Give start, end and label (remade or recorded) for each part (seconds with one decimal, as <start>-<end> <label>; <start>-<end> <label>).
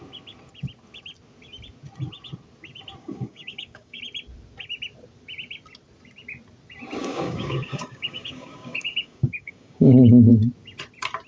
0.0-3.0 recorded; 3.0-4.0 remade; 4.0-7.0 recorded; 7.0-10.3 remade; 10.3-11.3 recorded